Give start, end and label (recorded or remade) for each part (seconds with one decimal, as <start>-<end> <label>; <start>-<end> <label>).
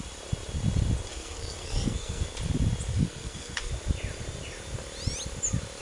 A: 0.0-1.1 recorded; 1.1-2.3 remade; 2.3-2.9 recorded; 2.9-3.7 remade; 3.7-5.8 recorded